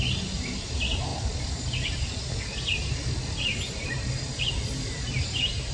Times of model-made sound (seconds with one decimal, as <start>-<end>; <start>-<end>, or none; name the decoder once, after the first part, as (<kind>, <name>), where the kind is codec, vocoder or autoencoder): none